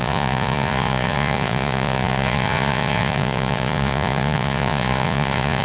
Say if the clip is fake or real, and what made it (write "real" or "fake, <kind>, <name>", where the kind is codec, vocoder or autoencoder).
fake, vocoder, Vocos